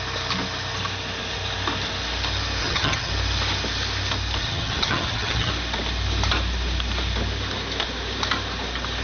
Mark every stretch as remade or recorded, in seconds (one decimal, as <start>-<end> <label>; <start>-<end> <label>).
0.0-2.6 recorded; 2.6-3.1 remade; 3.1-4.4 recorded; 4.4-5.5 remade; 5.5-9.0 recorded